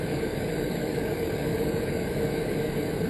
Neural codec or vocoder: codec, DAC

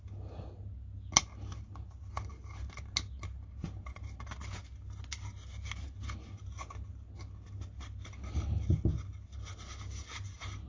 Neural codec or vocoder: none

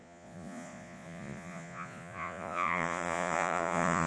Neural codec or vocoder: vocoder, Vocos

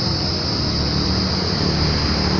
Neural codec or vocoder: none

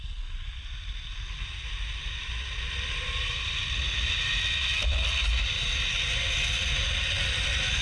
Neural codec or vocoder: none